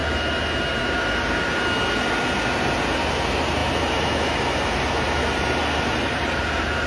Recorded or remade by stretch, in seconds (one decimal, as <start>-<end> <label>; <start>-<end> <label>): 0.0-6.9 recorded